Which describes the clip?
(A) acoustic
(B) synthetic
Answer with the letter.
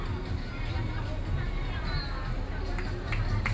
A